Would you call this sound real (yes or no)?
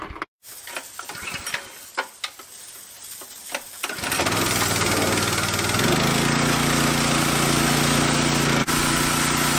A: yes